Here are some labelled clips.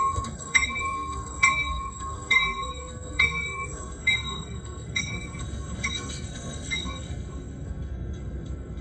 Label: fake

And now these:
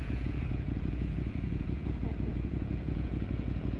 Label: fake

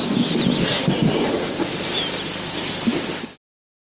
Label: real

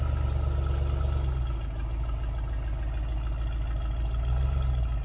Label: real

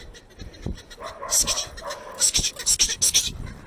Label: real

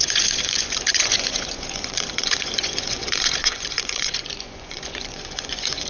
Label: fake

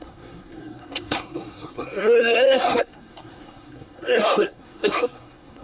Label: fake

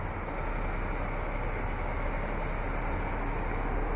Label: real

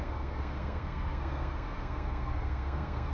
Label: fake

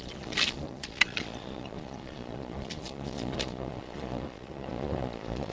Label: fake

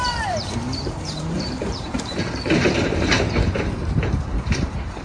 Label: fake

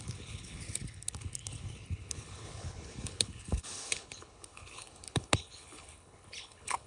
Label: fake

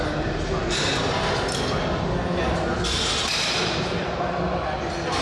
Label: real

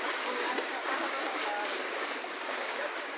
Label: fake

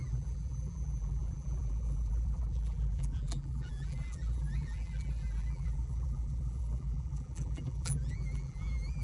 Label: fake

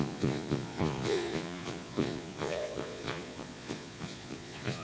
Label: fake